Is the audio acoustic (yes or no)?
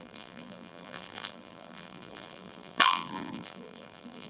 no